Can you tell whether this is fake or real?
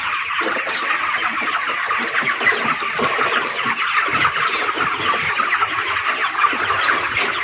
real